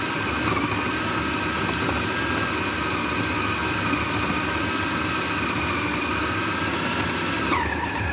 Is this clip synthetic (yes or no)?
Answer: no